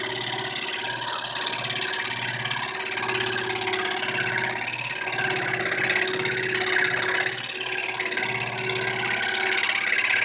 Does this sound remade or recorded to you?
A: recorded